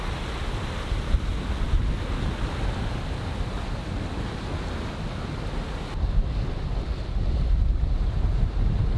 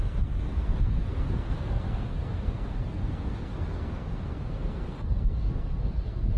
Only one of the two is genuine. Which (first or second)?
first